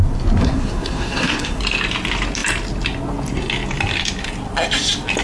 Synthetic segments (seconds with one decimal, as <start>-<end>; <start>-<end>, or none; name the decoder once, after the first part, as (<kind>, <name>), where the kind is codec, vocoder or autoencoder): 0.4-1.6 (codec, SNAC)